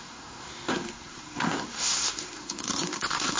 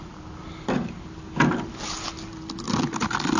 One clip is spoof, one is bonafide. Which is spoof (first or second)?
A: first